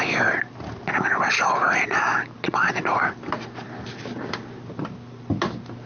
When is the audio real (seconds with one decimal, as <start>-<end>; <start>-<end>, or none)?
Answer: 0.0-5.9